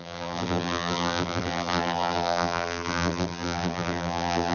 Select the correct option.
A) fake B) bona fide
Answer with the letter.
A